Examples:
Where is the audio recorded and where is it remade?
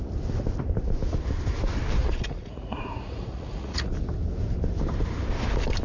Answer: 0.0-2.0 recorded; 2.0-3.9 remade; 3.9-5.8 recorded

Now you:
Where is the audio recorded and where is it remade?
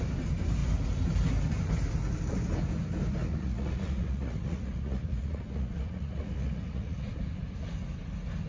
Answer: 0.0-3.2 recorded; 3.2-7.2 remade; 7.2-8.5 recorded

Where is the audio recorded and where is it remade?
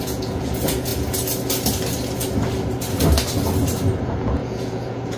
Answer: 0.0-0.9 remade; 0.9-4.0 recorded; 4.0-5.2 remade